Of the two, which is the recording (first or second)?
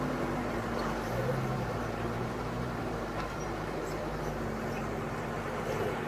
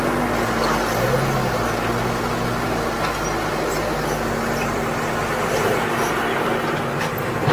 second